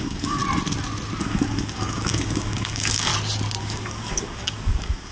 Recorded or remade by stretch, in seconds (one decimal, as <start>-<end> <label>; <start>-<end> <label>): 0.0-0.4 remade; 0.4-1.2 recorded; 1.2-3.1 remade; 3.1-3.6 recorded; 3.6-5.1 remade